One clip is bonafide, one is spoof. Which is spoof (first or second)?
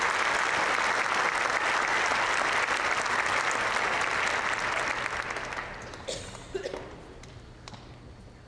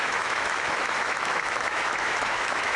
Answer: second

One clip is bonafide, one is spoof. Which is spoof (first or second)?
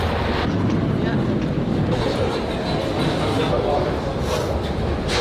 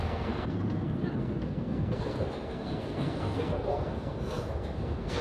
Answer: second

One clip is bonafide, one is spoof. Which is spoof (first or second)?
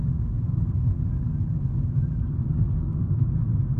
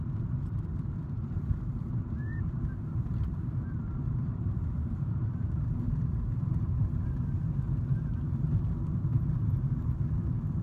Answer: second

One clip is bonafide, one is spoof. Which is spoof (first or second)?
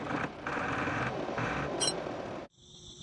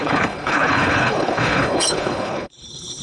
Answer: second